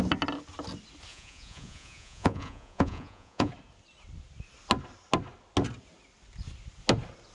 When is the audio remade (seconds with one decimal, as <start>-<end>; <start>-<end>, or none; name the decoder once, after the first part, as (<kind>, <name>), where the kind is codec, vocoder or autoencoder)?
1.1-3.5 (vocoder, Vocos)